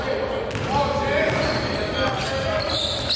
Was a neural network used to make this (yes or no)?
no